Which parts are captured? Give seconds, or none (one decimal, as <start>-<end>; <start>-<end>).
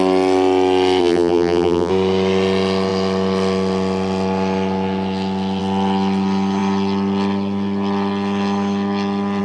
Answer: 0.0-1.0; 1.9-9.4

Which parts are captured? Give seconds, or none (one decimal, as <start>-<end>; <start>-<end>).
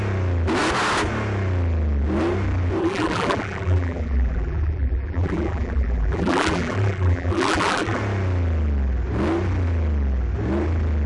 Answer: 0.0-2.8; 8.0-11.1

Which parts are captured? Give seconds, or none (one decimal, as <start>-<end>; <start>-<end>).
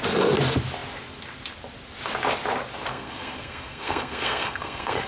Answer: 0.0-2.9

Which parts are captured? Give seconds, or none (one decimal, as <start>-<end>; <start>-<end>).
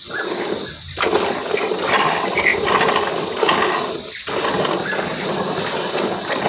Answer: 0.0-6.5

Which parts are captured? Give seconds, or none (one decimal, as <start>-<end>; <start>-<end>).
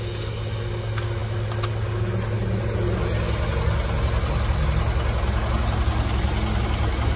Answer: 0.0-7.2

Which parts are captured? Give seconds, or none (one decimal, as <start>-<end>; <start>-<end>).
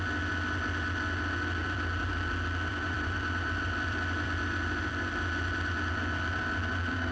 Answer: 0.0-1.6; 2.1-2.7